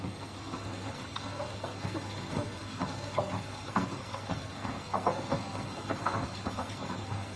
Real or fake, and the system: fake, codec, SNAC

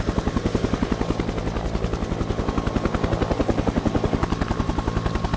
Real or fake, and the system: real